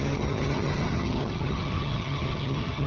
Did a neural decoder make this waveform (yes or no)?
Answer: yes